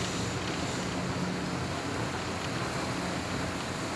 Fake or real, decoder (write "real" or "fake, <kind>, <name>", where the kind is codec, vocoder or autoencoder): real